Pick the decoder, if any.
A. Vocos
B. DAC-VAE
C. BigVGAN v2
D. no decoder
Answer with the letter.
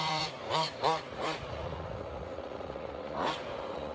A